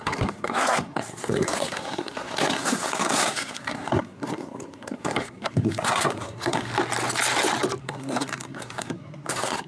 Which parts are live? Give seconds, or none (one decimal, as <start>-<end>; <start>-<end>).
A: 6.7-7.8